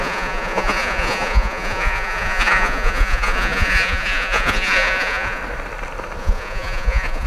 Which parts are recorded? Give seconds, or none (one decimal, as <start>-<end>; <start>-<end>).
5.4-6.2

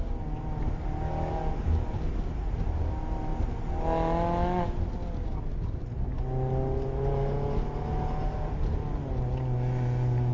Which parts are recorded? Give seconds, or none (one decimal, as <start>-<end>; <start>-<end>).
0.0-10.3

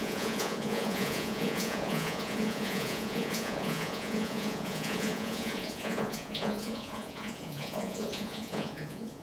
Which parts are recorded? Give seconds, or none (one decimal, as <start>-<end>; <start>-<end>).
none